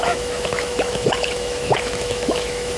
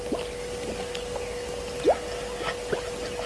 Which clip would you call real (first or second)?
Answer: second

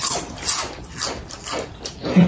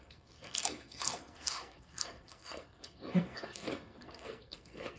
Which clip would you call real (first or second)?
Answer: first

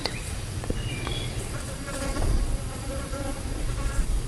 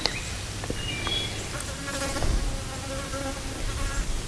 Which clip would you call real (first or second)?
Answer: second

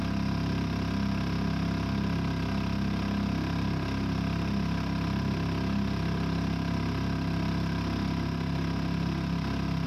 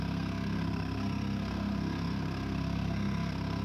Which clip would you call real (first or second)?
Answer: first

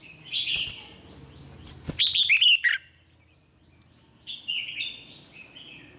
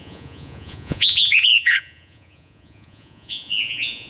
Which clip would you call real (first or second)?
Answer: first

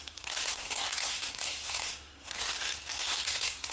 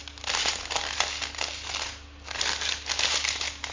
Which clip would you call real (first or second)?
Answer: second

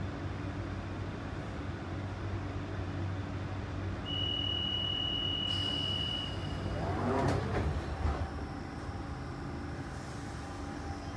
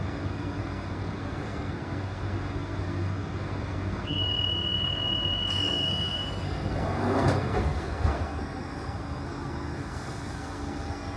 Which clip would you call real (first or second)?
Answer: first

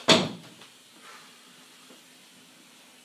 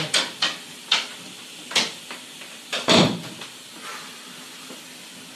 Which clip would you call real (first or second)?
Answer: first